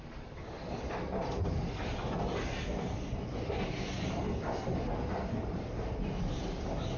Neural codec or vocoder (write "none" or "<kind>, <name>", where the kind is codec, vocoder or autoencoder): none